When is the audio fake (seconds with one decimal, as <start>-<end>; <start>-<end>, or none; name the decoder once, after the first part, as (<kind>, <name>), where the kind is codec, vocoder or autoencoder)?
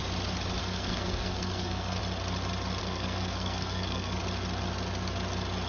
0.6-2.0 (codec, SNAC); 2.8-4.2